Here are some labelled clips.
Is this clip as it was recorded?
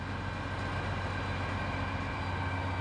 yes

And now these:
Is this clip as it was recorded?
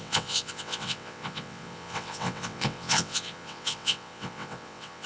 no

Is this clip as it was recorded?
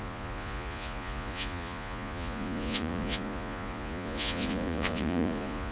no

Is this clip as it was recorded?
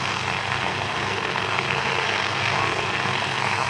no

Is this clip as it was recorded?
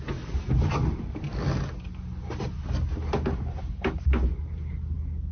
yes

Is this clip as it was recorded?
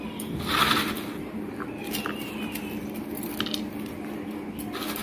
yes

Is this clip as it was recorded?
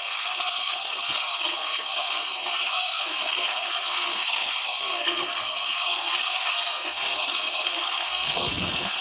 no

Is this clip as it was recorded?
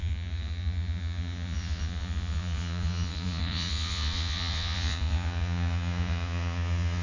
no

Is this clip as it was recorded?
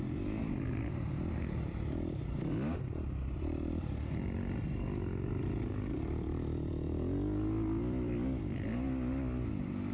no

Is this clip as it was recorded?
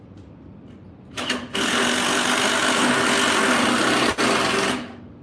yes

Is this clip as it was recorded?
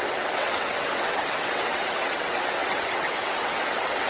no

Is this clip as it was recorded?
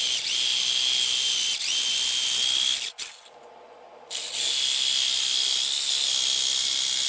yes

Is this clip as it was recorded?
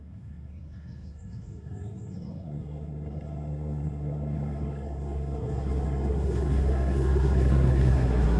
no